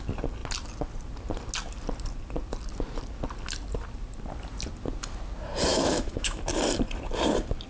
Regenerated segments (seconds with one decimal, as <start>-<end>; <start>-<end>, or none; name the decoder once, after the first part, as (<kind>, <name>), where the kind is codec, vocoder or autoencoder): 5.7-6.4 (autoencoder, DAC-VAE)